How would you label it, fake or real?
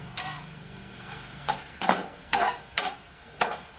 fake